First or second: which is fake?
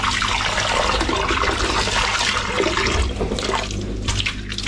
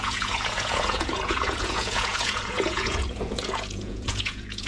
second